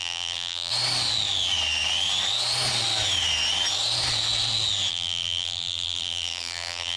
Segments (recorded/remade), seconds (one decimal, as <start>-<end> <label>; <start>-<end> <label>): 0.0-0.7 remade; 0.7-4.9 recorded; 4.9-7.0 remade